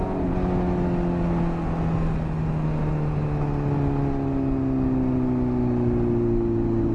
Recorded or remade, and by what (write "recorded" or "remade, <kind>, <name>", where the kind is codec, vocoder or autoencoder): recorded